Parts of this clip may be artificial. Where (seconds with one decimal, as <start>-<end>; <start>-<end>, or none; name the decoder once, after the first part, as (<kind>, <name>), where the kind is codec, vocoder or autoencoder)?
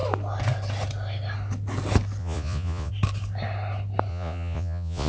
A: 2.2-2.9 (vocoder, Vocos); 4.1-5.1